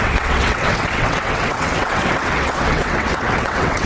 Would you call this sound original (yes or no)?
no